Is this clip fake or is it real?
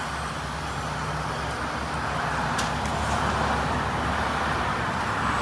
real